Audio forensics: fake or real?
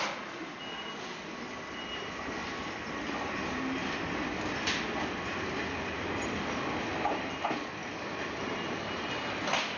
real